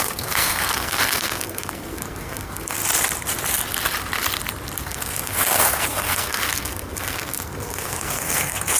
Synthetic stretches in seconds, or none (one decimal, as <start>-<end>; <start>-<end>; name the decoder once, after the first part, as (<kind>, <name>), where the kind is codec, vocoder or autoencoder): 0.0-2.8 (codec, SNAC); 4.8-8.8

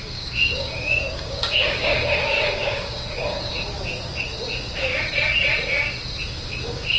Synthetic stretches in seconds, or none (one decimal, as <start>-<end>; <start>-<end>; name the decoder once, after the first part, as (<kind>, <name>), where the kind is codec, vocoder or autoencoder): 0.0-4.9 (codec, DAC); 6.2-7.0

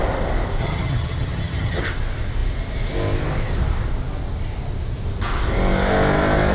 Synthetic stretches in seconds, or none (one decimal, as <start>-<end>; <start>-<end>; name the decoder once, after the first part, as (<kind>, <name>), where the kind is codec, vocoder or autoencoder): 0.6-1.8 (vocoder, HiFi-GAN)

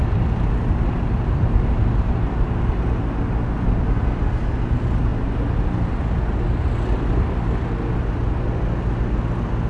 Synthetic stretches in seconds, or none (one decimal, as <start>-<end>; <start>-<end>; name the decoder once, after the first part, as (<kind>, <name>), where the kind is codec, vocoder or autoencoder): none

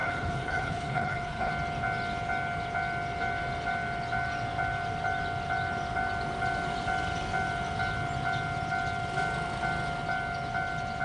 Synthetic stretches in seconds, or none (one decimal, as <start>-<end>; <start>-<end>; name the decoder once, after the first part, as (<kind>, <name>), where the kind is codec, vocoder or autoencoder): 0.0-1.5 (codec, HILCodec)

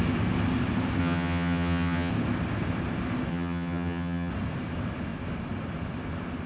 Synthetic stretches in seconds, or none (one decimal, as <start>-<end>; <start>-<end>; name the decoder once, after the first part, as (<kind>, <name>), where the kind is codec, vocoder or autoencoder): 1.0-2.1 (vocoder, HiFi-GAN); 3.3-4.3

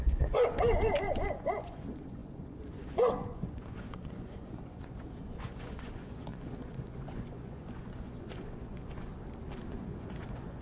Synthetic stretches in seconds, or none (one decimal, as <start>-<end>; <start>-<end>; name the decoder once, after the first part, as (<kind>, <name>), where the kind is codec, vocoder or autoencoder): 0.0-9.1 (vocoder, Vocos); 9.7-10.6

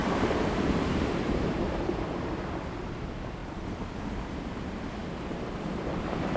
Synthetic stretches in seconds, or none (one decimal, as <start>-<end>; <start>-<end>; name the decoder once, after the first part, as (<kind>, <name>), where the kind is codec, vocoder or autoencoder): 0.0-1.9 (vocoder, BigVGAN v2); 3.4-4.3; 5.0-6.4